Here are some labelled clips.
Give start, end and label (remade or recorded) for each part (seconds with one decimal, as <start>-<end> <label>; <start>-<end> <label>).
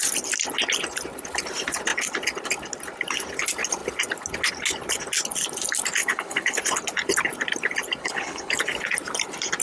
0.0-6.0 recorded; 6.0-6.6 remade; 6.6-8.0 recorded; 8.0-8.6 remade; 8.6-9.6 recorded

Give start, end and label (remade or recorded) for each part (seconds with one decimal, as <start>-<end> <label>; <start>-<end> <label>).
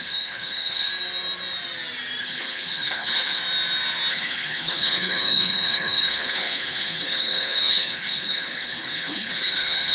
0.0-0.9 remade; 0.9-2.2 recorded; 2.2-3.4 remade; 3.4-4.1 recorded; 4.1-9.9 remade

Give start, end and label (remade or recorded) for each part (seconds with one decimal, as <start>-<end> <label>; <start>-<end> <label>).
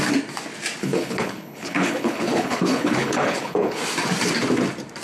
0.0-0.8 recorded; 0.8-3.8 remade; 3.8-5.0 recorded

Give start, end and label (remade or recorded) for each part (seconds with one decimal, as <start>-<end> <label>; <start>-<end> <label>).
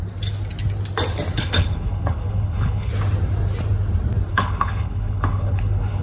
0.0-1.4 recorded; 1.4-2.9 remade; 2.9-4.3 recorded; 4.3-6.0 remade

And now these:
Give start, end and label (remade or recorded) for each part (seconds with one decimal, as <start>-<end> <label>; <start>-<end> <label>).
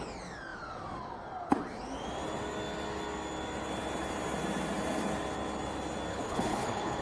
0.0-6.1 recorded; 6.1-7.0 remade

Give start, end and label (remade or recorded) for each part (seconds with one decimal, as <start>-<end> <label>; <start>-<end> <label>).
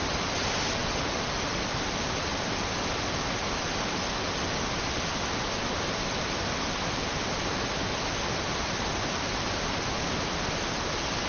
0.0-11.3 recorded